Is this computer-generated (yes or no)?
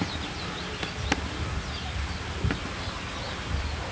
no